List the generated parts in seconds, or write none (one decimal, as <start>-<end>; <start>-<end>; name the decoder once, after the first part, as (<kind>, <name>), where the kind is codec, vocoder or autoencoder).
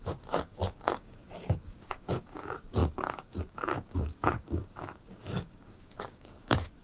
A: 0.0-6.8 (codec, DAC)